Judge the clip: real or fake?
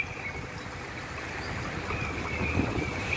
fake